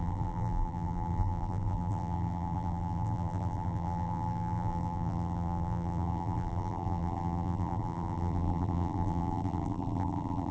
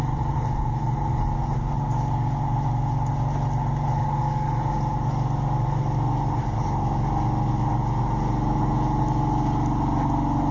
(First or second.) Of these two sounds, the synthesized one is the first